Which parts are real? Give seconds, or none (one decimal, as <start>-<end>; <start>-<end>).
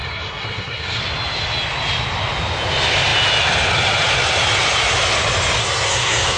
1.0-5.6